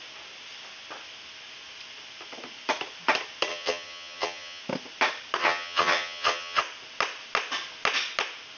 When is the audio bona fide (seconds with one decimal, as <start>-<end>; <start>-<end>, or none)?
0.0-3.5; 4.6-5.4; 6.6-8.6